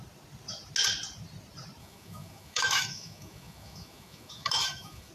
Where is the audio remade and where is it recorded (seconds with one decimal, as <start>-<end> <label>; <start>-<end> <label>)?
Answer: 0.0-1.8 recorded; 1.8-5.1 remade